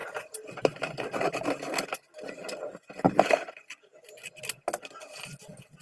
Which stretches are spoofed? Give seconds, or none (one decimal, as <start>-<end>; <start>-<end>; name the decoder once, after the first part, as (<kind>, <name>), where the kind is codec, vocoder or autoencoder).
none